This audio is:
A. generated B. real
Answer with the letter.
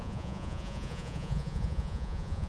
A